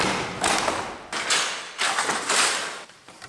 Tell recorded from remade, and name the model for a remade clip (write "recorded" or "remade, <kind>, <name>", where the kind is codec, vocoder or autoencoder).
recorded